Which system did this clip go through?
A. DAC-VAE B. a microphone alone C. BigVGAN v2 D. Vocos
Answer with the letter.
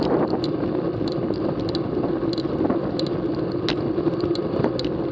B